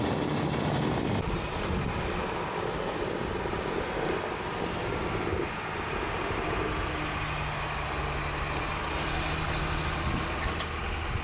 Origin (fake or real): real